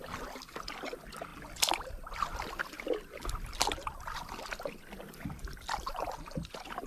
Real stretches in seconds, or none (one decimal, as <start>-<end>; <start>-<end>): 0.0-6.9